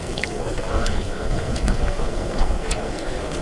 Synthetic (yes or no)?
yes